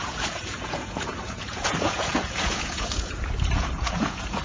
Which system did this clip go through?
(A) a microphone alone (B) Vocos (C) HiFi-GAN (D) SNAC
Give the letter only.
B